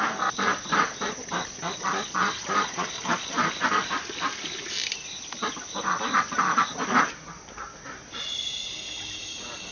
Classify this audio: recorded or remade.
recorded